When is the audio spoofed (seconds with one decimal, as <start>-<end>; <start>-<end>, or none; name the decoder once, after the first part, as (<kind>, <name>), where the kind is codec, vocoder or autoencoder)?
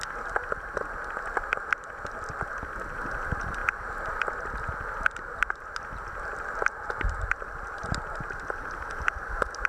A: none